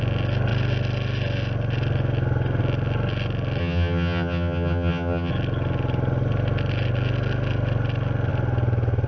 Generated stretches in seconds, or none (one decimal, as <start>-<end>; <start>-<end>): 3.6-5.3